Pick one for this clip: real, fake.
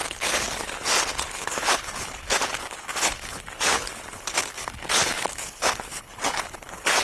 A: fake